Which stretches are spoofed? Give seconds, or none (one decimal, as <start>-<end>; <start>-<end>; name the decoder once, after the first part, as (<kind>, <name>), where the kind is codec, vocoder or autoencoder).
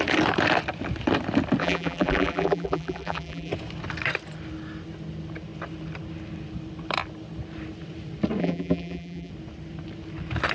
1.6-3.5 (vocoder, BigVGAN v2); 8.4-9.3